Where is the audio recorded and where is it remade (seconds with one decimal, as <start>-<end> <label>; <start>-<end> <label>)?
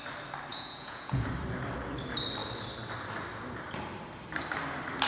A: 0.0-0.5 recorded; 0.5-1.3 remade; 1.3-5.1 recorded